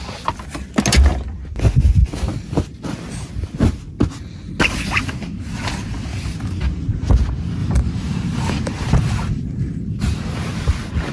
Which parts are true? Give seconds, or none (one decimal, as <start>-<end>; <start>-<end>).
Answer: 0.0-7.6; 10.3-11.1